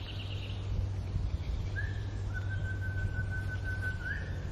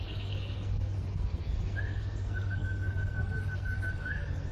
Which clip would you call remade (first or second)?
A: second